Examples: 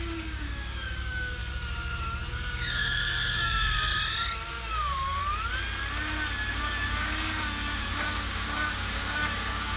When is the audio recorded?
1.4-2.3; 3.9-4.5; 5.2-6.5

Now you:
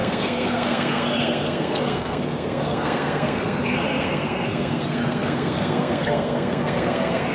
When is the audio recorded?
none

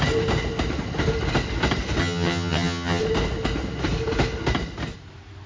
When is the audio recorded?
0.0-2.0; 3.0-5.5

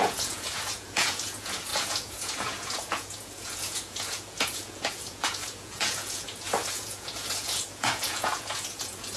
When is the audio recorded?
none